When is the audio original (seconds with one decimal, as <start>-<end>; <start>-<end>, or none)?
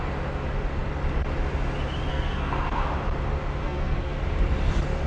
0.0-2.1; 2.9-3.6; 4.2-5.1